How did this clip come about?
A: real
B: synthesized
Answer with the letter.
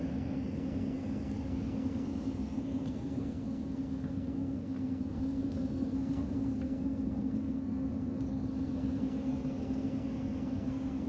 B